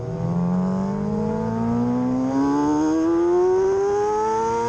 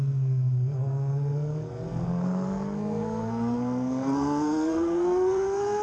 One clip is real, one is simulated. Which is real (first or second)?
first